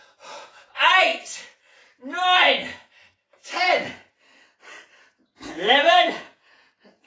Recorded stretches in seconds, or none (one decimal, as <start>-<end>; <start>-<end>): 1.1-5.4